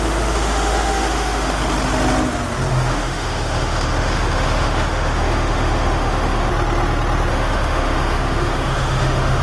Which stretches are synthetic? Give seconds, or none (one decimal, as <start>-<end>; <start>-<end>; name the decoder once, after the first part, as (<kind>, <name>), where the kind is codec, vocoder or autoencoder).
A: 0.0-1.6 (autoencoder, DAC-VAE); 2.7-6.5; 7.3-9.4